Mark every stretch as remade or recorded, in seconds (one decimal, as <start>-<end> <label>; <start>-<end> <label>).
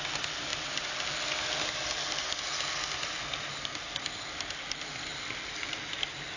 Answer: 0.0-5.1 recorded; 5.1-5.8 remade; 5.8-6.4 recorded